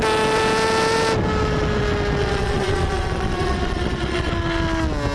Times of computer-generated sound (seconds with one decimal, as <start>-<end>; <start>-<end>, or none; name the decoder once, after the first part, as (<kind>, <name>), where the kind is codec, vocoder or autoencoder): 2.2-4.3 (vocoder, Vocos)